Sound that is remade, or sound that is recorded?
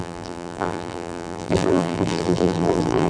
remade